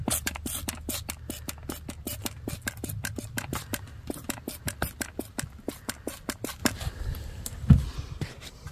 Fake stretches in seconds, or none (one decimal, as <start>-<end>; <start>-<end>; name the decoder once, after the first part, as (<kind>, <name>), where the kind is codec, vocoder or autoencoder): none